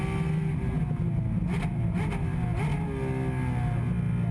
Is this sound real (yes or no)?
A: yes